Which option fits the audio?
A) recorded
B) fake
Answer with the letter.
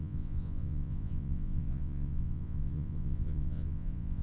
B